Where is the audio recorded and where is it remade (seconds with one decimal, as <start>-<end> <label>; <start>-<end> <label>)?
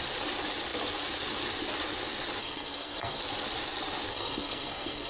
0.0-2.4 recorded; 2.4-3.2 remade; 3.2-4.1 recorded; 4.1-5.1 remade